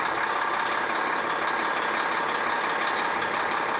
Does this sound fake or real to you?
real